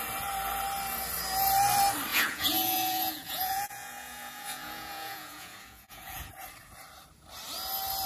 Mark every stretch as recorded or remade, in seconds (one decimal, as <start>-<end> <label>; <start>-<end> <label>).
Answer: 0.0-2.1 recorded; 2.1-6.3 remade; 6.3-8.1 recorded